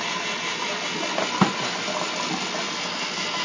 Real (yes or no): yes